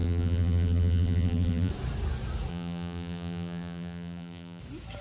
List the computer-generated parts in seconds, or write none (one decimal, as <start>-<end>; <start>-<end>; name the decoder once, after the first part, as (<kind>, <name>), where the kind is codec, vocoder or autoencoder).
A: 0.0-1.7 (vocoder, BigVGAN v2); 2.5-4.6